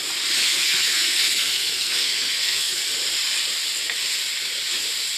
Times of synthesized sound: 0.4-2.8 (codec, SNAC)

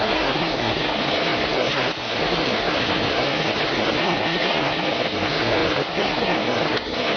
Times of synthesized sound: 0.0-7.2 (codec, SNAC)

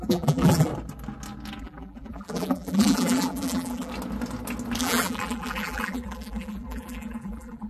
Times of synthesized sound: 0.0-0.7 (vocoder, BigVGAN v2); 1.6-3.9; 4.8-7.7

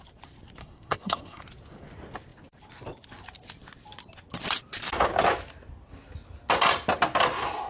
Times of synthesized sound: 0.6-1.4 (codec, SNAC)

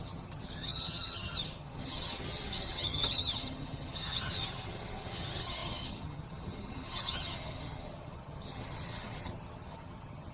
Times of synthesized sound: 0.0-10.3 (vocoder, HiFi-GAN)

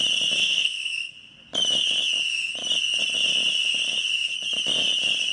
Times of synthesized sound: 0.4-1.1 (codec, SNAC)

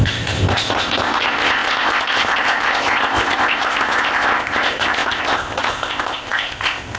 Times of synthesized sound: 0.0-7.0 (codec, ZipCodec)

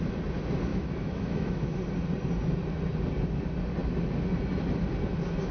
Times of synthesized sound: 0.7-1.8 (autoencoder, DAC-VAE)